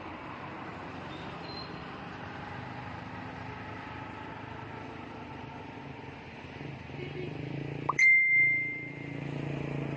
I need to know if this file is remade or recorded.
remade